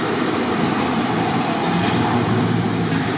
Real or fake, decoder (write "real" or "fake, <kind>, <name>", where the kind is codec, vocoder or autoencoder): fake, vocoder, BigVGAN v2